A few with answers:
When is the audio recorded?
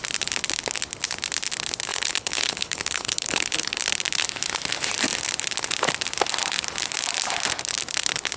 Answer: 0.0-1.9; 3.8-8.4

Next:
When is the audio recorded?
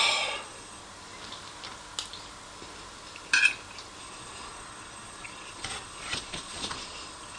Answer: 0.8-4.0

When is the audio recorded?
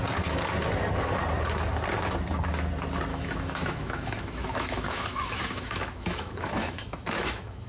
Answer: 0.0-3.1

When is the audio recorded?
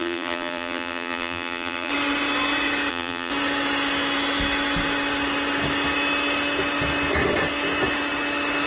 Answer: 1.9-2.9; 3.3-8.7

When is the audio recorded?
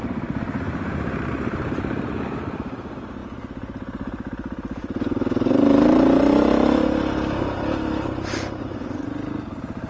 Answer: 0.0-9.9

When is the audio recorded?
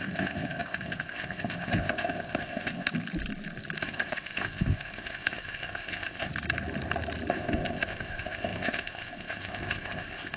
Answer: 2.9-3.8; 6.3-7.3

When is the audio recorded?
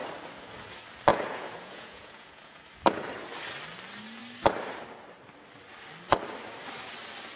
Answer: 0.0-1.1; 2.6-7.4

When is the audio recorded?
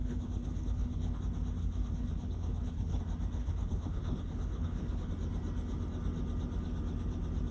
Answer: 1.2-1.6; 3.0-3.4; 5.1-7.5